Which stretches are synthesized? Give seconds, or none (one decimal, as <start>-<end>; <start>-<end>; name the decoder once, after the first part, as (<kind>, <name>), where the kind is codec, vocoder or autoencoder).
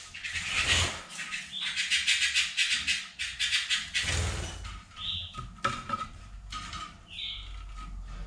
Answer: none